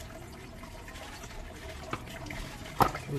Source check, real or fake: real